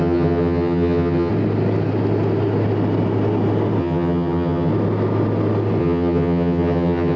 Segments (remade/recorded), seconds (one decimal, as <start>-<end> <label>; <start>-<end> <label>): 0.0-1.3 remade; 1.3-3.8 recorded; 3.8-4.7 remade; 4.7-5.8 recorded; 5.8-7.2 remade